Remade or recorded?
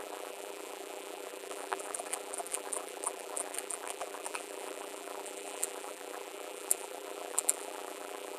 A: remade